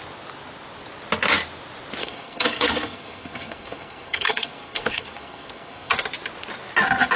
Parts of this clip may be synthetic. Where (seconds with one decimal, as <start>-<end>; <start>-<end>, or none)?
2.0-5.9